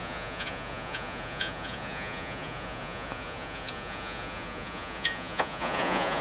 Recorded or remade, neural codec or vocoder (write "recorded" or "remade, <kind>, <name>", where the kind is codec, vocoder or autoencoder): remade, vocoder, Vocos